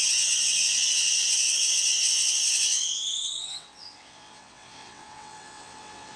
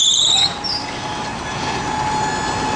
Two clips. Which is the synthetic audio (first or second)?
first